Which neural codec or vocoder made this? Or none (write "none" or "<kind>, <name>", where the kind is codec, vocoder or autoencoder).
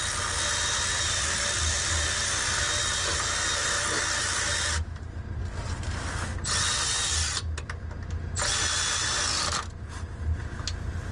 none